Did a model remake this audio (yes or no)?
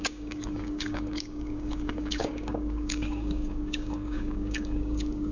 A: yes